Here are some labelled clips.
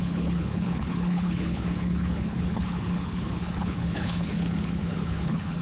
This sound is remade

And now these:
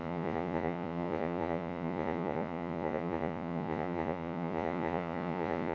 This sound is remade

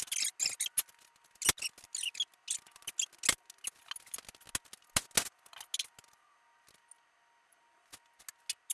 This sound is recorded